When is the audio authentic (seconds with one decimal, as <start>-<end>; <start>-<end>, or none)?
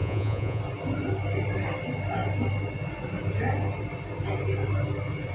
0.6-5.3